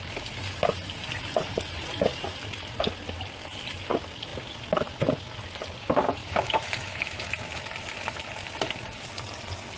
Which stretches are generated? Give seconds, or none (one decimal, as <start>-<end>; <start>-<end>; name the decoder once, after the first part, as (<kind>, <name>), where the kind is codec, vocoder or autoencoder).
6.2-7.3 (autoencoder, DAC-VAE)